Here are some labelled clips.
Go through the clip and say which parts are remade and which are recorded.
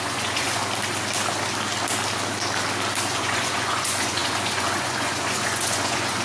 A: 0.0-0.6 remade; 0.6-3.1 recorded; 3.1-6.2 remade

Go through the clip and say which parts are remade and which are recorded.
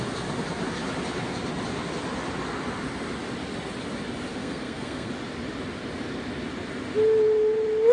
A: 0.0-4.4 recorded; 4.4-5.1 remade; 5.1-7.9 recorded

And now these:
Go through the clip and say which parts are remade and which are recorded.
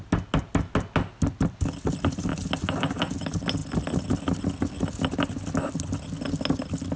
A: 0.0-7.0 recorded